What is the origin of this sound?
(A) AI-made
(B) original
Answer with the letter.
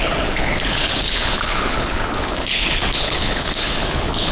A